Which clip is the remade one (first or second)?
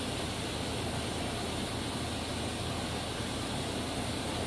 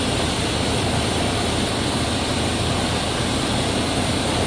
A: second